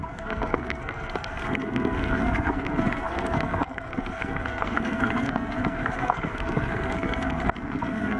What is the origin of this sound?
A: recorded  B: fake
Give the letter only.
B